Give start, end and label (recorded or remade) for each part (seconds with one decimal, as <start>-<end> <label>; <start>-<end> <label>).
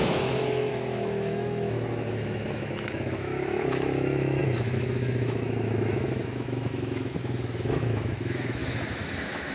0.0-9.5 remade